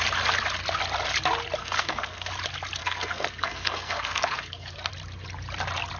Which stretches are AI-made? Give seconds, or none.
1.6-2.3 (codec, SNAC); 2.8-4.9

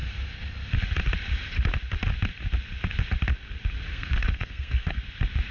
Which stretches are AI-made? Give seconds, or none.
3.9-5.0 (codec, SNAC)

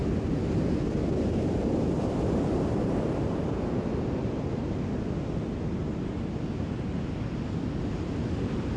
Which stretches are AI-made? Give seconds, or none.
0.0-4.6 (vocoder, BigVGAN v2)

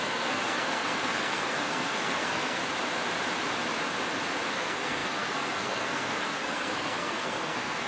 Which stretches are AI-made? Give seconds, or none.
0.0-2.6 (codec, SNAC); 4.5-7.9